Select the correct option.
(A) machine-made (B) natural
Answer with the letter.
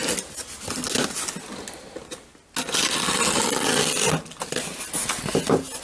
B